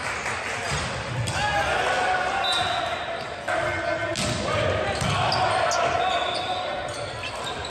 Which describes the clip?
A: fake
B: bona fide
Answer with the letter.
B